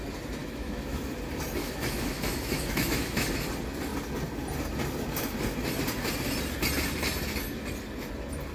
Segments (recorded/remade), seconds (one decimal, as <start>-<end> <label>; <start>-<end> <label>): 0.0-0.4 recorded; 0.4-1.0 remade; 1.0-1.6 recorded; 1.6-3.3 remade; 3.3-8.5 recorded